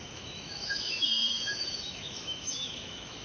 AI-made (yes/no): yes